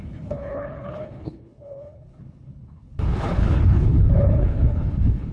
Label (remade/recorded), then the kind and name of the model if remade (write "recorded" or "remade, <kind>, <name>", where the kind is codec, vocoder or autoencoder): remade, codec, HILCodec